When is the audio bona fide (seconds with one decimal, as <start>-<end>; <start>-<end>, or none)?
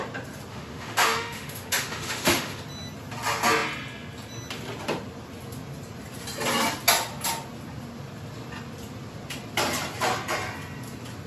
0.0-0.5; 2.6-11.3